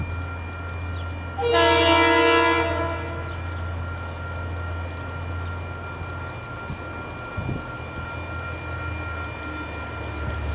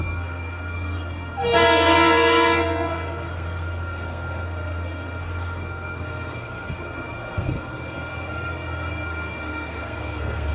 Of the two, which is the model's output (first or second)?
second